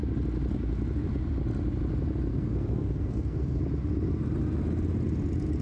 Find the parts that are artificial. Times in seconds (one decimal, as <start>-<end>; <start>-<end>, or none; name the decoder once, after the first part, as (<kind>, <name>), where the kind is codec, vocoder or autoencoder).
2.3-3.6 (codec, SNAC)